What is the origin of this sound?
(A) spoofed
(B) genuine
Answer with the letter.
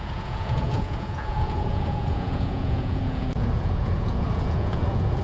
A